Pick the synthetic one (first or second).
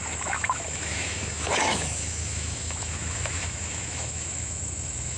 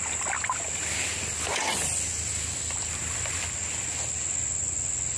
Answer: first